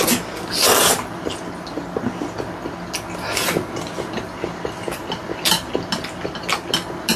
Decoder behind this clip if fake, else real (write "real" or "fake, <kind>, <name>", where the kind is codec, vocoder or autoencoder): real